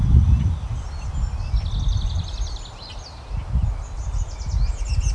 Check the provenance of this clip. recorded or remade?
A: recorded